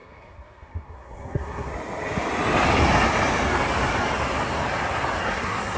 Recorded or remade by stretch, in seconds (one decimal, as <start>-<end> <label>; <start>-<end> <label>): 0.0-1.7 remade; 1.7-5.2 recorded; 5.2-5.8 remade